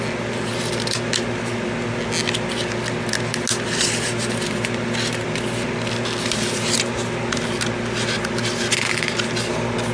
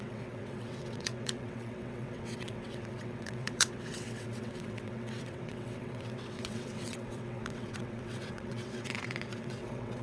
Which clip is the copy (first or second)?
second